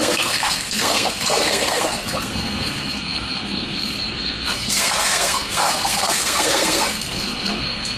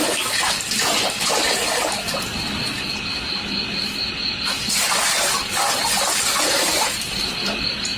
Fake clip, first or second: first